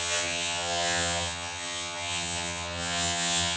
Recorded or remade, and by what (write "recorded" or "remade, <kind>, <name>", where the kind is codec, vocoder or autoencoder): remade, vocoder, HiFi-GAN